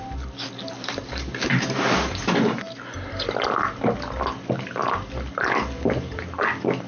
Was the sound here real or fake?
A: real